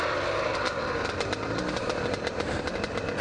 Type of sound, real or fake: real